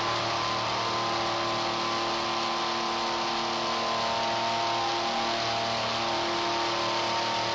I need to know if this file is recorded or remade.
recorded